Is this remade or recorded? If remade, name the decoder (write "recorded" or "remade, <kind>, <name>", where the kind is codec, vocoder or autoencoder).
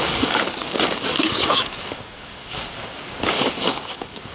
remade, codec, DAC